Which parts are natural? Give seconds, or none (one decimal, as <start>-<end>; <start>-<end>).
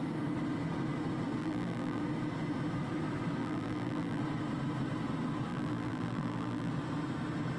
0.0-1.4; 2.0-3.4; 4.2-5.5; 6.7-7.6